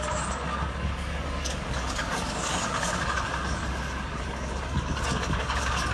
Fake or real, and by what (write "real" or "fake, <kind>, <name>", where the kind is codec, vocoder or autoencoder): fake, codec, DAC